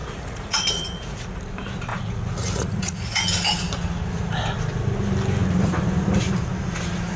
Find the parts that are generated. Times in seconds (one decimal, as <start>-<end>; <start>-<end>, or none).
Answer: 0.0-1.4; 1.9-3.2